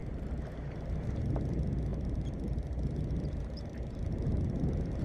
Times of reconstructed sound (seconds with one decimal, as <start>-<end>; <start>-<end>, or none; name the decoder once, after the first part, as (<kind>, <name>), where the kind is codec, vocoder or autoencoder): 0.0-1.2 (vocoder, BigVGAN v2); 1.9-5.0